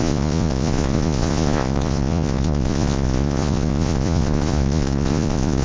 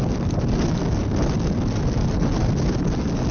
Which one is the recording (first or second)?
second